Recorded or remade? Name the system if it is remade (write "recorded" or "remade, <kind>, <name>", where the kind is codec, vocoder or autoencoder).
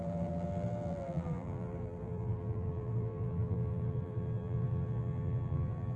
remade, vocoder, BigVGAN v2